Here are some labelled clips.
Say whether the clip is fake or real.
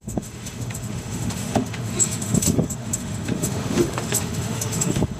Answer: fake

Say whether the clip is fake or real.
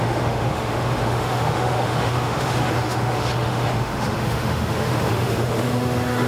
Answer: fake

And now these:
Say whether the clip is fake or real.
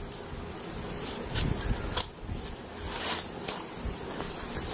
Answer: real